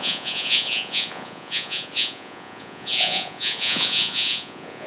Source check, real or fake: fake